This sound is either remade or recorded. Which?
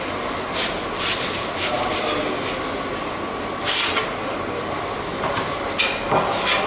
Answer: recorded